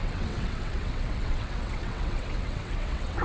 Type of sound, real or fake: fake